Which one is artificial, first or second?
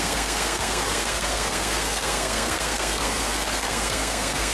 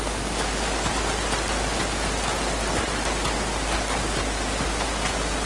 first